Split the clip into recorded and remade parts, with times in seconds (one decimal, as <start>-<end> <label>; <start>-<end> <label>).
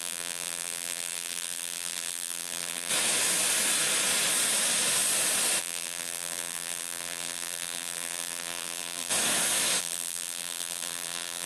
0.0-2.9 remade; 2.9-5.6 recorded; 5.6-9.1 remade; 9.1-9.8 recorded; 9.8-11.5 remade